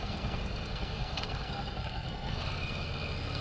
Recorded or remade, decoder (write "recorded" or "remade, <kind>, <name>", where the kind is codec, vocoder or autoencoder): remade, codec, SNAC